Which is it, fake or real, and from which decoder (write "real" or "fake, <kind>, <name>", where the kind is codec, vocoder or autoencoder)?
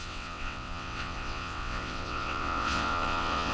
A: fake, vocoder, WaveNeXt